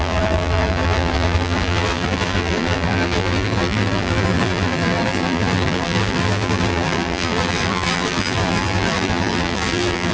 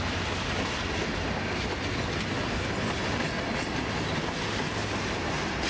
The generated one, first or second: first